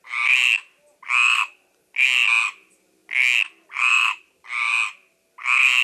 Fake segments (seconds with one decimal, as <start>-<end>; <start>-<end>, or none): none